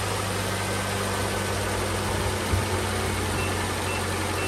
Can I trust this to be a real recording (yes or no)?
yes